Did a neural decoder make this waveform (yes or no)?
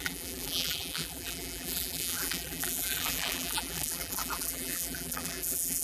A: yes